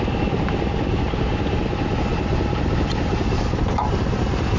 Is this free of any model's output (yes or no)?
yes